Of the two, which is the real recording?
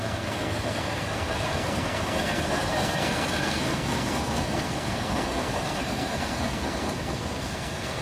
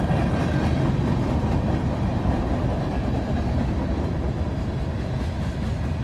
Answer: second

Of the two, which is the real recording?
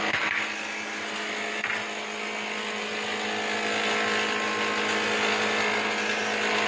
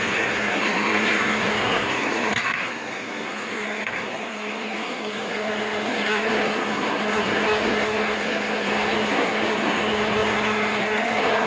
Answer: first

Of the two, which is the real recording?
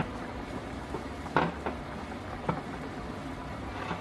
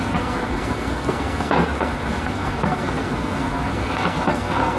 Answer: first